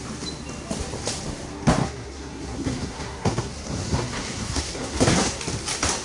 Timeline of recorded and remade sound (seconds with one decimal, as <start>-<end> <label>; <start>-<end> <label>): 0.0-1.8 recorded; 1.8-5.4 remade; 5.4-6.0 recorded